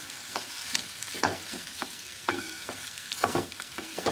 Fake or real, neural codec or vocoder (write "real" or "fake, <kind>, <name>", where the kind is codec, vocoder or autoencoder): fake, codec, SNAC